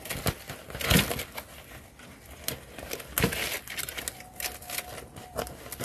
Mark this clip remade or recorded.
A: recorded